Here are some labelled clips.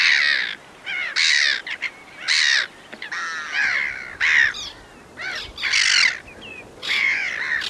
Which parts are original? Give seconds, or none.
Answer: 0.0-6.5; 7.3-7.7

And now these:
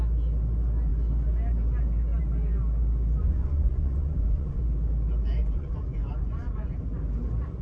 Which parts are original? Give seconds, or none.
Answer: 0.0-3.2; 4.6-5.4; 6.8-7.6

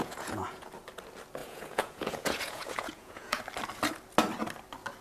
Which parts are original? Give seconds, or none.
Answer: 0.7-1.4; 3.4-5.0

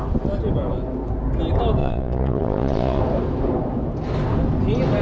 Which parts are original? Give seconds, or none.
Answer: 0.0-1.8; 3.0-5.0